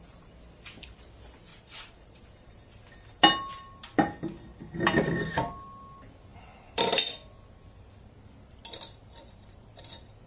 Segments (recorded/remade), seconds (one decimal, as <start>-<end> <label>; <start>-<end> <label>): 0.0-1.5 recorded; 1.5-2.2 remade; 2.2-10.3 recorded